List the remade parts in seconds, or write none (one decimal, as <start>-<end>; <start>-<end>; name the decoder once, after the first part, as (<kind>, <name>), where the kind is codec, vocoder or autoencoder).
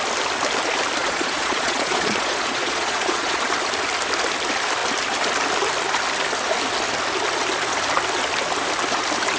1.0-3.4 (vocoder, Vocos)